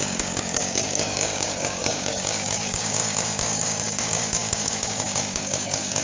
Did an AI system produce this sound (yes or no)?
yes